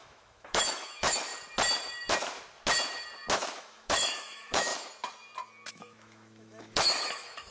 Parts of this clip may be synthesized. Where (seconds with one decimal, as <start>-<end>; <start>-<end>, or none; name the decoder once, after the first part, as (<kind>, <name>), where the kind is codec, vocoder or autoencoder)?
0.0-1.3 (autoencoder, DAC-VAE); 3.6-4.7; 5.7-7.5